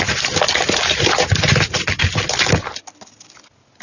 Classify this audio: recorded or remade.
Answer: recorded